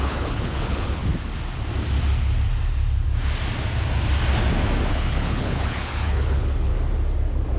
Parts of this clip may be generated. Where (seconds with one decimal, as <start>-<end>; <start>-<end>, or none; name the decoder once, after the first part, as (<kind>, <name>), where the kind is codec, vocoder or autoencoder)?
0.0-1.0 (codec, HILCodec); 4.9-6.7